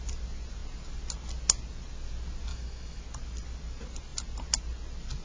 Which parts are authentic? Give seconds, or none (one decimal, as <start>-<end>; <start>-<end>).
0.0-2.5; 3.0-5.2